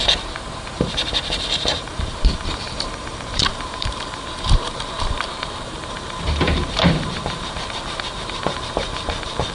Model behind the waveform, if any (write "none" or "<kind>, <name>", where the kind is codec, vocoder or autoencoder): vocoder, BigVGAN v2